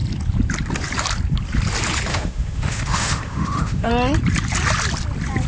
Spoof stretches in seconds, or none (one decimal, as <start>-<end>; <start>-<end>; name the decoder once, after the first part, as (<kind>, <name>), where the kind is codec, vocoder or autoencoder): 2.1-3.9 (autoencoder, DAC-VAE)